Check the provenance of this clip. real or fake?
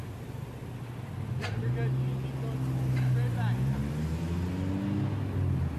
real